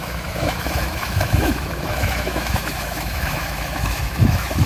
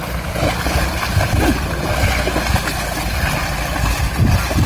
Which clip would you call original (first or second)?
second